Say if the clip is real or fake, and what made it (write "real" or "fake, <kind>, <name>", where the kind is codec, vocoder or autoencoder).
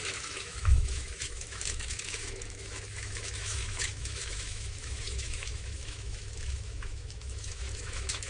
fake, autoencoder, DAC-VAE